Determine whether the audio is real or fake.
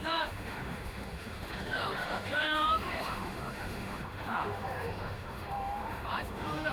fake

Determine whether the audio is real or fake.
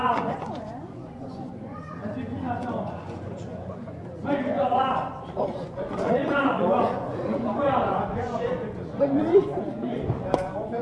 fake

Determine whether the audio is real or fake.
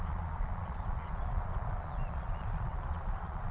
fake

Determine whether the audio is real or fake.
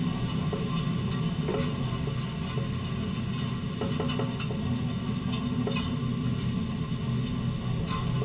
real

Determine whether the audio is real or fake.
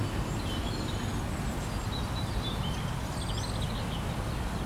real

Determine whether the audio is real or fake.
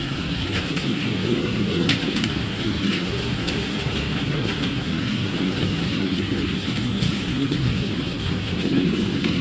fake